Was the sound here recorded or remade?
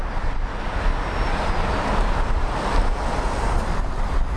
recorded